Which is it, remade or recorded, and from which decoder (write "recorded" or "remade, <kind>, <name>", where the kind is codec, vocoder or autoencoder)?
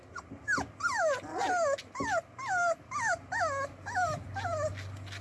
recorded